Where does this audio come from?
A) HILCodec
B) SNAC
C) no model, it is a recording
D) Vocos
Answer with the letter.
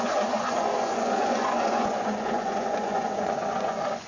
D